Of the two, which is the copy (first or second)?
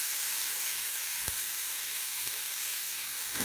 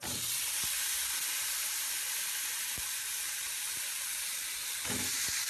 first